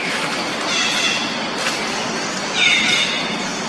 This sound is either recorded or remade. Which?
recorded